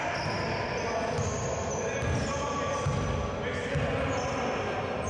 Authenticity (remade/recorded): recorded